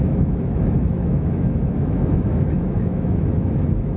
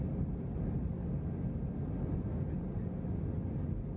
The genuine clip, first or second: second